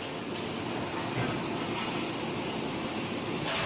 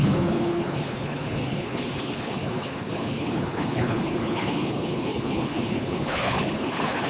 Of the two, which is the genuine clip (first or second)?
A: first